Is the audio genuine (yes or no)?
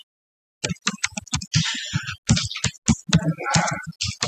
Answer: yes